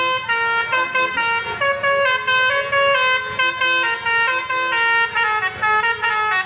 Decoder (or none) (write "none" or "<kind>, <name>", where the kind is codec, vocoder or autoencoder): none